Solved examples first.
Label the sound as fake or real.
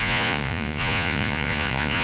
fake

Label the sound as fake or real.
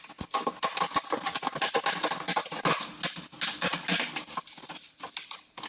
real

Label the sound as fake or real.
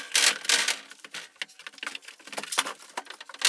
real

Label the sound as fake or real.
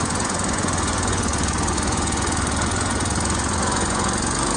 fake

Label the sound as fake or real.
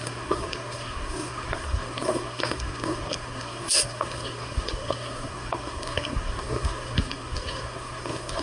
fake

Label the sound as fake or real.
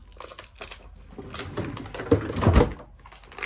real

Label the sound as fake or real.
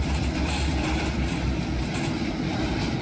real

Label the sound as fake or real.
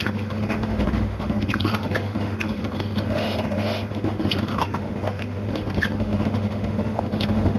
fake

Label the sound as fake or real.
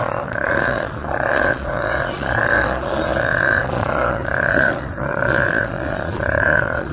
fake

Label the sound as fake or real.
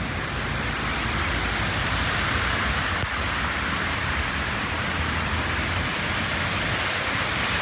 real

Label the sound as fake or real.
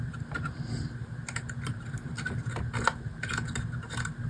real